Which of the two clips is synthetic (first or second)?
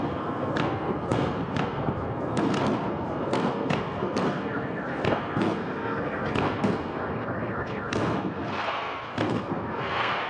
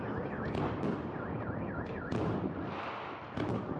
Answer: first